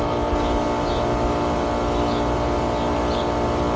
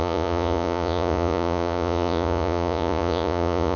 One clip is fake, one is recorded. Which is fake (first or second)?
second